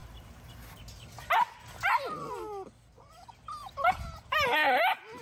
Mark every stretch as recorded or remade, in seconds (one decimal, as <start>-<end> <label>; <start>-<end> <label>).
0.0-5.2 recorded